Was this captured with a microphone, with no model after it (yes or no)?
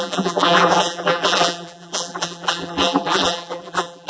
no